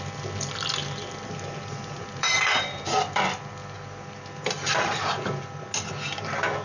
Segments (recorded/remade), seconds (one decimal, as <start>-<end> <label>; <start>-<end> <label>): 0.0-0.8 recorded; 0.8-3.2 remade; 3.2-3.6 recorded; 3.6-5.6 remade; 5.6-6.6 recorded